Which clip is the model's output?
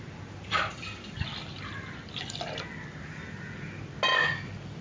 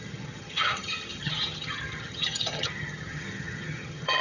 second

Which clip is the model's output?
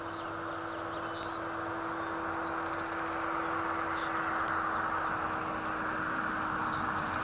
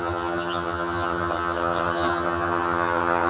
second